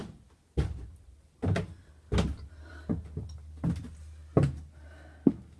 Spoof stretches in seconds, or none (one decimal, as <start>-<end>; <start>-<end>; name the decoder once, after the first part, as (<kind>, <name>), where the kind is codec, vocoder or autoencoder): none